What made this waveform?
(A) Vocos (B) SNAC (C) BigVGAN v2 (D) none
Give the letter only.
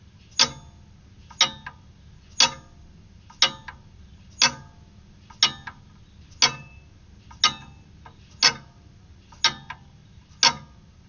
D